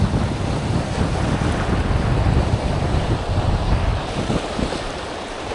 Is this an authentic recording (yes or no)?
yes